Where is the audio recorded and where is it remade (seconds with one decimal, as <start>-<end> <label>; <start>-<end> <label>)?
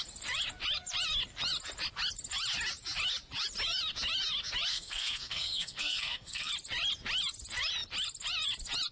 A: 0.0-4.7 recorded; 4.7-6.5 remade; 6.5-8.9 recorded